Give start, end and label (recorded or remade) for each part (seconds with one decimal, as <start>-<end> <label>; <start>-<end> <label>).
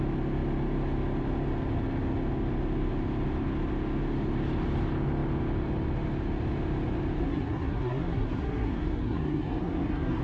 0.0-7.2 recorded; 7.2-10.2 remade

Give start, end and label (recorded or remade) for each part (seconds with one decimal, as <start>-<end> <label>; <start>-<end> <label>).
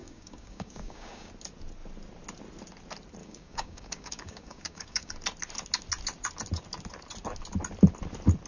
0.0-1.3 remade; 1.3-3.2 recorded; 3.2-5.1 remade; 5.1-8.5 recorded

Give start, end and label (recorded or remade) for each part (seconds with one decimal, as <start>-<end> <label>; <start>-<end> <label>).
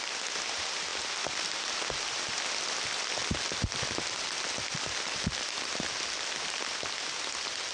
0.0-7.7 recorded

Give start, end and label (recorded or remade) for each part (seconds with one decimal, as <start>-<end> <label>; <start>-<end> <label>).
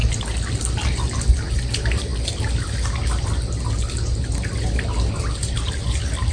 0.0-6.3 recorded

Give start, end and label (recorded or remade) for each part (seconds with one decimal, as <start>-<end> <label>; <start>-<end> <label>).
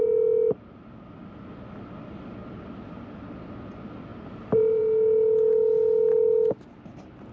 0.0-4.1 recorded; 4.1-4.8 remade; 4.8-7.3 recorded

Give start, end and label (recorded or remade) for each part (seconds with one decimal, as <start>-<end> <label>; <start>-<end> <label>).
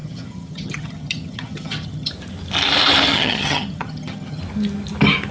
0.0-2.1 remade; 2.1-3.1 recorded; 3.1-4.4 remade; 4.4-5.3 recorded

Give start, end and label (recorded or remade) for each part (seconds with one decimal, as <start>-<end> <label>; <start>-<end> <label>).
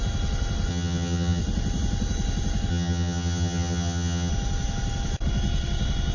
0.0-0.7 recorded; 0.7-1.4 remade; 1.4-2.7 recorded; 2.7-4.3 remade; 4.3-6.1 recorded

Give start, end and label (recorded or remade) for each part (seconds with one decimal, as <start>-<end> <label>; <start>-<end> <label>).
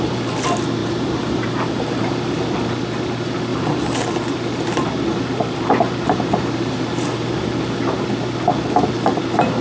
0.0-0.8 recorded; 0.8-2.4 remade; 2.4-3.5 recorded; 3.5-8.1 remade; 8.1-9.6 recorded